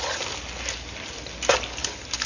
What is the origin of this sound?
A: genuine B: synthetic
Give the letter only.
A